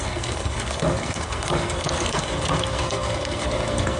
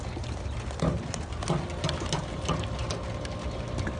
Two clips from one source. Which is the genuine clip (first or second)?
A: second